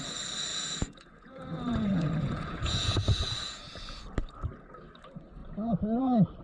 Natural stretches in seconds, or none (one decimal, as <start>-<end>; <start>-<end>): 0.0-0.5; 4.0-6.4